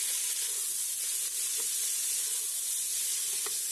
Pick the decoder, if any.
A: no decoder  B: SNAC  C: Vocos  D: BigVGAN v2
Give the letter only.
A